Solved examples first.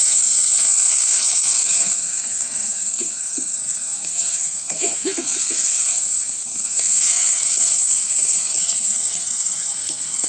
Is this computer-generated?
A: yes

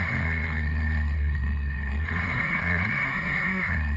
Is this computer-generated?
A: yes